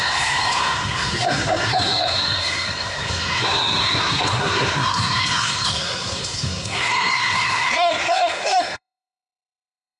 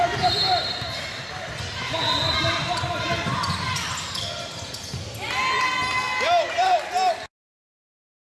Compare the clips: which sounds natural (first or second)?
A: second